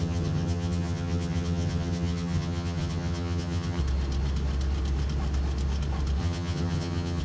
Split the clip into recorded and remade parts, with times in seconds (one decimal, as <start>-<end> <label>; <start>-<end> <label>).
0.0-3.8 remade; 3.8-6.2 recorded; 6.2-7.2 remade